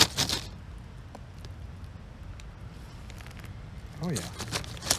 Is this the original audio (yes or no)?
yes